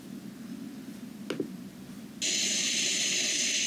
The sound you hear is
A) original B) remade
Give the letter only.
A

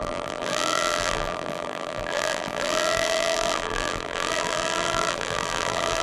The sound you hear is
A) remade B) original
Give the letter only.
A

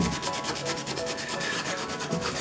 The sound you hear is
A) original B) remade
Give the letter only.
B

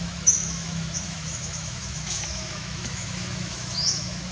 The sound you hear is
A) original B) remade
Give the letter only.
B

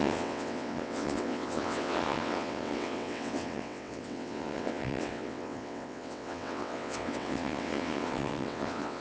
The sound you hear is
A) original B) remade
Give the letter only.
B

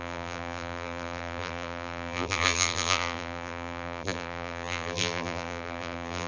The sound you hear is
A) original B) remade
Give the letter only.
B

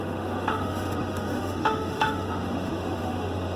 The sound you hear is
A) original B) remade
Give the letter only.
B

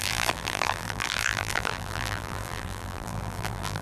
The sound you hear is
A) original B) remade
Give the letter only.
B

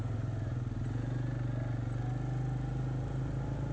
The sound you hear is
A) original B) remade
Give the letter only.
A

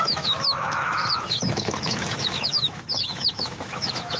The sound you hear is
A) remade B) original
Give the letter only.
A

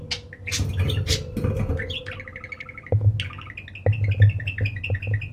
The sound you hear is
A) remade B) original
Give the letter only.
B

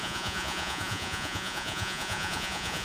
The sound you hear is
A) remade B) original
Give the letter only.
A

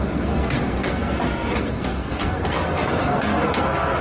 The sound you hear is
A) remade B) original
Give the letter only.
A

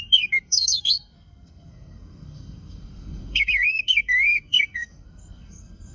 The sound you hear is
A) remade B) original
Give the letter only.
A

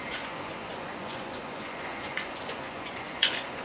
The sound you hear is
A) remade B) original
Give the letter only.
A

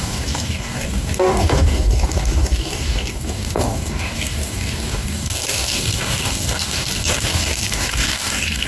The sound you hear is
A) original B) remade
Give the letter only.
B